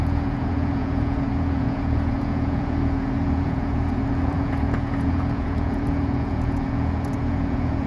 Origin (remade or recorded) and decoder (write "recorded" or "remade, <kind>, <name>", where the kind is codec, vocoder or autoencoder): remade, vocoder, Vocos